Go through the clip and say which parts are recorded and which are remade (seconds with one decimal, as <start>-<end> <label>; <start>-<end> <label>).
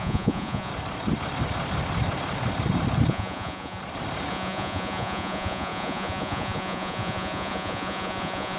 0.0-0.7 remade; 0.7-3.1 recorded; 3.1-3.8 remade; 3.8-4.3 recorded; 4.3-8.6 remade